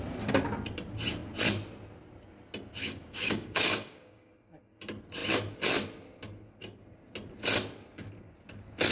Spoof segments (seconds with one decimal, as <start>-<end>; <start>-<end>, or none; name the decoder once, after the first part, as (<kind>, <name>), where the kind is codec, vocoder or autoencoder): 2.8-4.3 (codec, DAC)